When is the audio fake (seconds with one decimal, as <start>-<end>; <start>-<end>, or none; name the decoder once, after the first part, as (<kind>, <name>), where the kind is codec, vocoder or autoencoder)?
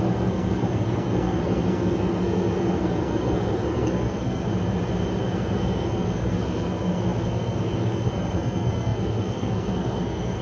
0.0-4.5 (codec, SNAC); 5.2-10.4